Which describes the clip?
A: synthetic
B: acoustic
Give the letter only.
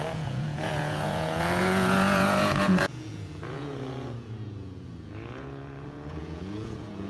A